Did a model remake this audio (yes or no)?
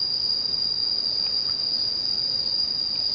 no